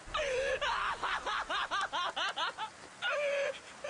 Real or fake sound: real